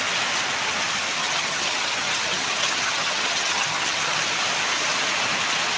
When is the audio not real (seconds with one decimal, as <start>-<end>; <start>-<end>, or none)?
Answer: 1.2-4.2